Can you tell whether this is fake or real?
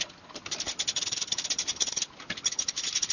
real